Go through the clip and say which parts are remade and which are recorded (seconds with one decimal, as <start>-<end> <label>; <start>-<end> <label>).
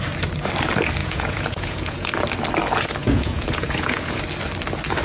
0.0-1.0 recorded; 1.0-2.1 remade; 2.1-3.0 recorded; 3.0-4.2 remade; 4.2-5.0 recorded